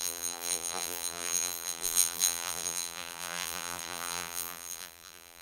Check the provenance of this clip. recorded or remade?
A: remade